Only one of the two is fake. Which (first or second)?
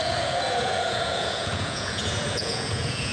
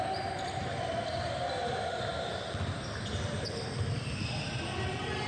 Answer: first